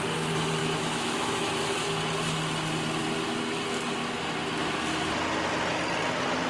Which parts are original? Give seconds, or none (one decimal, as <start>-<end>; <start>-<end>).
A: 0.0-0.6; 1.6-6.5